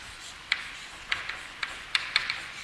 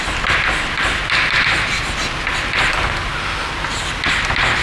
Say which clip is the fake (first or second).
first